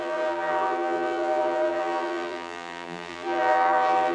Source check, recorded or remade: remade